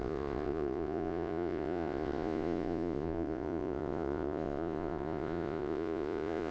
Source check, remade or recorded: remade